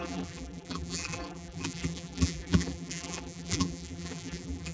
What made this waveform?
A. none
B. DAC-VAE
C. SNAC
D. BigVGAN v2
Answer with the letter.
D